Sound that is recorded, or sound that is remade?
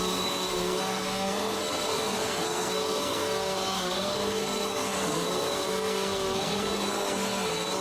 remade